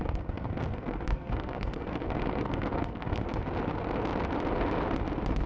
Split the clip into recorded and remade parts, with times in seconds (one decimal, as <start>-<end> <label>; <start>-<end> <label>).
0.0-3.3 remade; 3.3-5.5 recorded